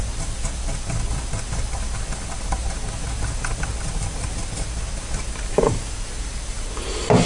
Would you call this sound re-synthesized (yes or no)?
no